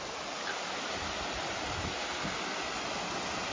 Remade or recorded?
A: recorded